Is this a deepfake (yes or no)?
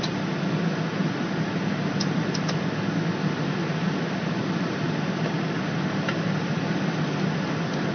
no